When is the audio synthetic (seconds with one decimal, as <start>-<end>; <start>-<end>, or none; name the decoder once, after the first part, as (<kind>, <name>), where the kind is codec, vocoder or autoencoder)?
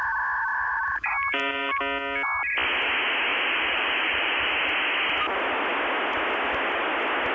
0.5-1.8 (vocoder, BigVGAN v2); 3.3-4.7